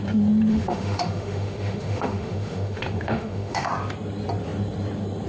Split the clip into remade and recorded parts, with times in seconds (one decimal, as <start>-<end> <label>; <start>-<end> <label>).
0.0-0.5 recorded; 0.5-3.7 remade; 3.7-5.3 recorded